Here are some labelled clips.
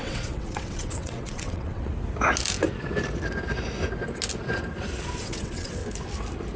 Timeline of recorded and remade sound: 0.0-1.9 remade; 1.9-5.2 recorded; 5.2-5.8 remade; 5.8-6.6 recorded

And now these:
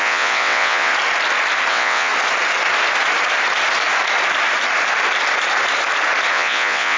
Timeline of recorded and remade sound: 0.0-0.9 remade; 0.9-1.7 recorded; 1.7-2.1 remade; 2.1-6.3 recorded; 6.3-7.0 remade

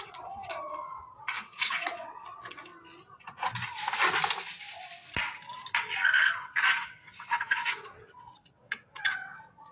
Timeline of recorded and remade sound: 0.0-2.7 remade; 2.7-6.4 recorded; 6.4-9.7 remade